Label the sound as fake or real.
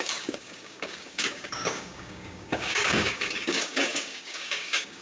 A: fake